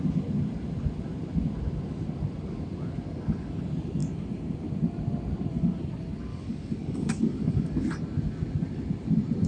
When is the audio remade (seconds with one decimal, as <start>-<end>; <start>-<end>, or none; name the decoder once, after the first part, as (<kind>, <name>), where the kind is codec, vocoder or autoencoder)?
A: 6.3-7.9 (codec, DAC)